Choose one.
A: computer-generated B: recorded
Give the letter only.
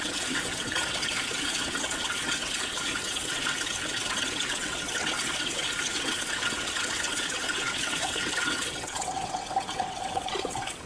A